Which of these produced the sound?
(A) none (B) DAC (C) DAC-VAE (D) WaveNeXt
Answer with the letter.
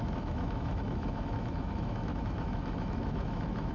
C